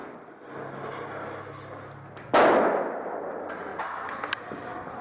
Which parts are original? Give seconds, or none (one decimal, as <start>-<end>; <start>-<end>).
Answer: 0.0-5.0